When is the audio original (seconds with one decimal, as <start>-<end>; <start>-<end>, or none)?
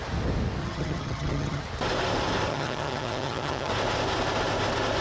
0.0-0.6; 1.6-2.5; 3.7-5.0